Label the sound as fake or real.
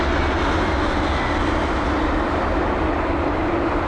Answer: real